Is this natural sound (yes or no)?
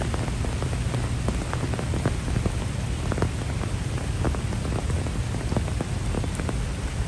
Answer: yes